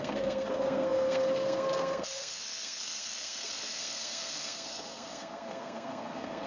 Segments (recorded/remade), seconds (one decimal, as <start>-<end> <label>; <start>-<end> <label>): 0.0-6.5 remade